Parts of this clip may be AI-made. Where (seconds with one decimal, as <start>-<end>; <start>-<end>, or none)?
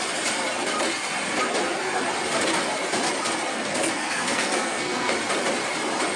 3.5-5.1